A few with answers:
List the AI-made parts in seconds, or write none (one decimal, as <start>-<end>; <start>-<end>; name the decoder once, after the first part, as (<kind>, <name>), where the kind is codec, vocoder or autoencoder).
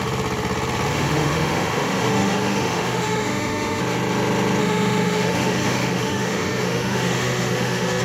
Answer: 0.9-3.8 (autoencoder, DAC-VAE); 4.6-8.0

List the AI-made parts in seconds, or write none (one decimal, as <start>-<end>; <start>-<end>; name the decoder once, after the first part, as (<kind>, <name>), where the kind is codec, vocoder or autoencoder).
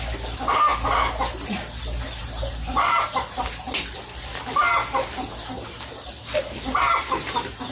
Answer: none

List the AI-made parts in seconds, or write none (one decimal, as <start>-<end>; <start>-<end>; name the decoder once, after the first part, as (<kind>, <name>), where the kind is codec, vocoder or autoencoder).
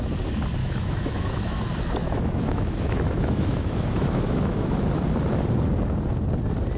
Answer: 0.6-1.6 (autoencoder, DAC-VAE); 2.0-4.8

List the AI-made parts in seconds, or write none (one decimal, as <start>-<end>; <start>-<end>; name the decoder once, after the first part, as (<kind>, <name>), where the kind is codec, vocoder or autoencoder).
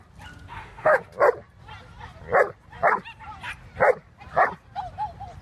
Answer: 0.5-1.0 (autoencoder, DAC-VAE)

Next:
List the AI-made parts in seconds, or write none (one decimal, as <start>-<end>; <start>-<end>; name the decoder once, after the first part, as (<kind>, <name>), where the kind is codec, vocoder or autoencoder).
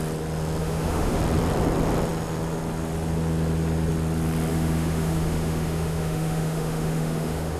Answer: 0.6-1.2 (autoencoder, DAC-VAE); 4.5-7.6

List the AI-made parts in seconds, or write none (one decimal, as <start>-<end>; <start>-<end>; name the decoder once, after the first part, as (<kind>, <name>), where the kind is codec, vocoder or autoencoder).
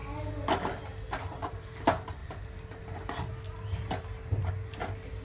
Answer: none